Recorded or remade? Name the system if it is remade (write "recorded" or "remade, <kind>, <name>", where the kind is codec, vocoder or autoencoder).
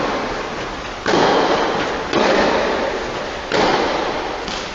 recorded